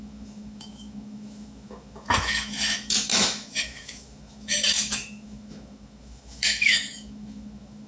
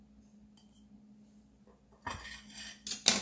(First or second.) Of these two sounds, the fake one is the first